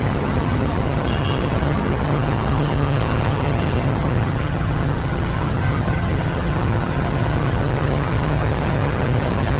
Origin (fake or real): fake